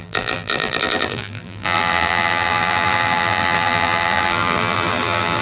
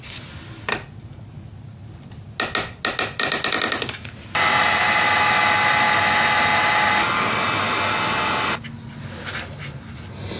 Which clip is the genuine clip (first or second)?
second